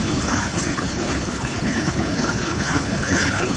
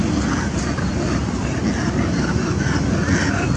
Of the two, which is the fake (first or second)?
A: first